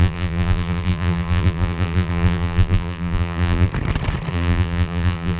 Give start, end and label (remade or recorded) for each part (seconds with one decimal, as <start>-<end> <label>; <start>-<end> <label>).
0.0-3.7 remade; 3.7-4.3 recorded; 4.3-5.4 remade